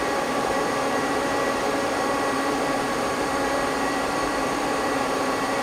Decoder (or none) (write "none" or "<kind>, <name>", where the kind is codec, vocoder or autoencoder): vocoder, BigVGAN v2